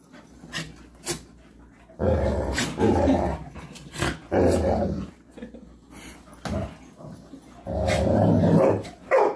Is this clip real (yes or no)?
yes